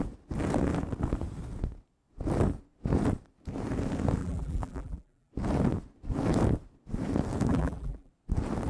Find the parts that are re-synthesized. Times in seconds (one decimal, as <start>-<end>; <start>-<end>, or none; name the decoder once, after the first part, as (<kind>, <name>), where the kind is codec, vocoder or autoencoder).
4.2-5.3 (vocoder, BigVGAN v2); 7.5-8.1